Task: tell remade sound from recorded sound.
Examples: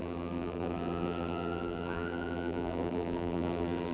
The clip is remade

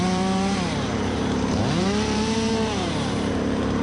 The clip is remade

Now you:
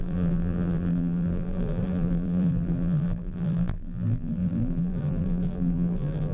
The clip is remade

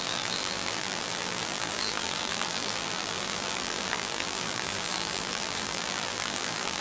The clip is remade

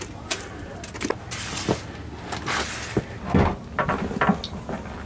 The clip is recorded